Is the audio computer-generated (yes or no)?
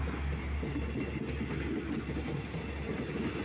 no